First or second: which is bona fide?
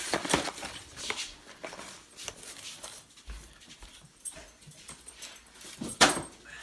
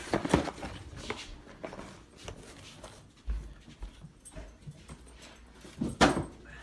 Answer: second